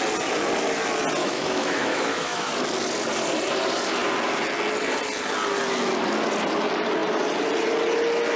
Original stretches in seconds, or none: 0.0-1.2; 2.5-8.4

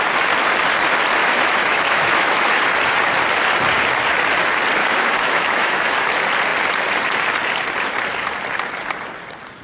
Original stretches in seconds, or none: 0.0-1.2; 2.6-4.8; 5.9-9.6

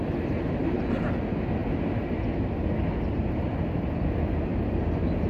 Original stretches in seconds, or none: 0.0-5.3

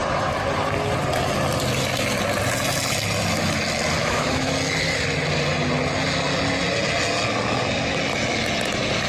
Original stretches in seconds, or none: 0.0-4.0; 4.5-9.1

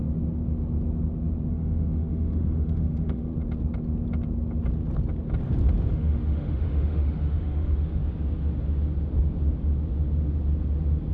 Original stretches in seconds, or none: 0.0-1.5; 3.3-5.9; 8.0-11.1